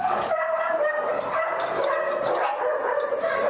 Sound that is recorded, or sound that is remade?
remade